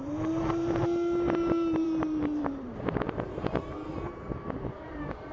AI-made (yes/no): yes